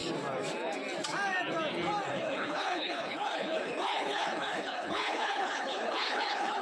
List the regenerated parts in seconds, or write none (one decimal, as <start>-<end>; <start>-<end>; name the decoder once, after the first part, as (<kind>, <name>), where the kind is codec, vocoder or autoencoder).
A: 2.1-6.6 (codec, HILCodec)